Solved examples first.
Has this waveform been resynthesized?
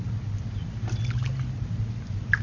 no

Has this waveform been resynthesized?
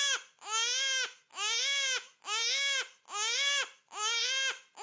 no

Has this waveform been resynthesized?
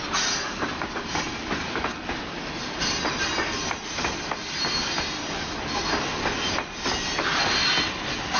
no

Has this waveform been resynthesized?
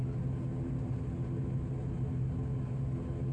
no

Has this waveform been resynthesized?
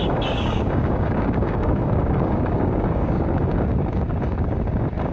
yes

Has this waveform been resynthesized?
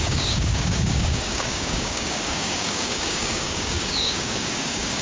yes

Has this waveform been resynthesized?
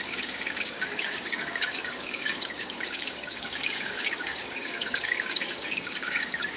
yes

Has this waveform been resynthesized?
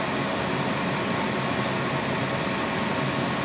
no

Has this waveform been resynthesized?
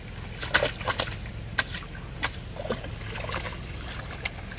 no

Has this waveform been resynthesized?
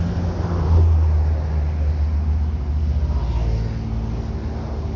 no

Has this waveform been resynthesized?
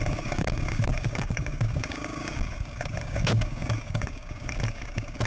yes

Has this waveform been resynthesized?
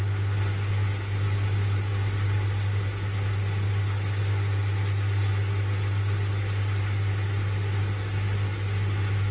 no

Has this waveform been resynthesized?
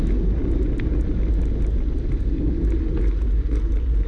no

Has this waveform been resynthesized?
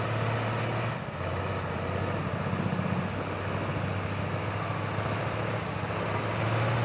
no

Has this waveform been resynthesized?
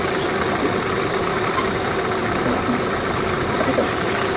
no